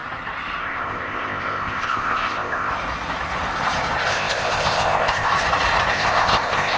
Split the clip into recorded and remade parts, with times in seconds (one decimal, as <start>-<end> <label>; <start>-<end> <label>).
0.0-0.6 recorded; 0.6-2.7 remade; 2.7-4.1 recorded; 4.1-5.3 remade; 5.3-5.9 recorded; 5.9-6.8 remade